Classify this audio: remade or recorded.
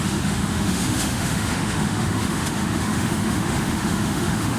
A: remade